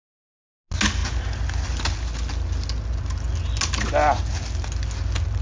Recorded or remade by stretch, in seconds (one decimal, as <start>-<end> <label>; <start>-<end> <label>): 0.0-5.4 recorded